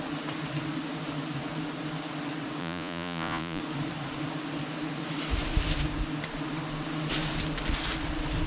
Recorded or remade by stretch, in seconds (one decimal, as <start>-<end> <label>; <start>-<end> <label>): 0.0-2.6 recorded; 2.6-3.6 remade; 3.6-8.5 recorded